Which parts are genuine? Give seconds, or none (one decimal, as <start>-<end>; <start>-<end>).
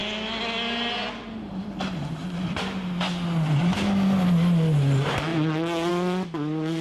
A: 0.0-6.8